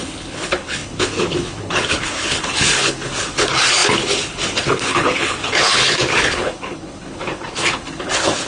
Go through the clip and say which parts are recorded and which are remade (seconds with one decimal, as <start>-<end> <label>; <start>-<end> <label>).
0.0-8.5 remade